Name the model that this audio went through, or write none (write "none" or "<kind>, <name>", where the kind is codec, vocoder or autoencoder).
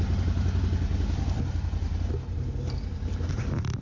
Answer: none